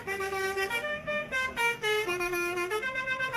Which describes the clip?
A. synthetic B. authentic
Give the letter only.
A